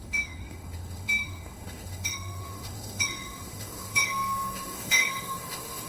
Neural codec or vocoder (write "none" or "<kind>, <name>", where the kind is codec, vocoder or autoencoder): autoencoder, DAC-VAE